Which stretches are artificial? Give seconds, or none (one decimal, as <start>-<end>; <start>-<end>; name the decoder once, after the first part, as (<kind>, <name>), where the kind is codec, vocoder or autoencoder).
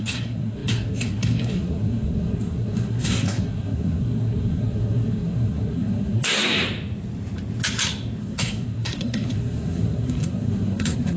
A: 0.0-6.6 (codec, SNAC); 8.2-11.2